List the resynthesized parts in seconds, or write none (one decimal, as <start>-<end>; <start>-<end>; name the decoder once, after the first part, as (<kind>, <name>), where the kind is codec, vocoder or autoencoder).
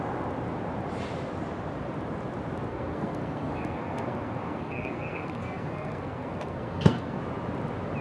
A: 2.7-7.2 (codec, SNAC)